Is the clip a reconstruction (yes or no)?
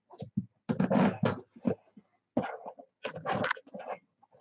no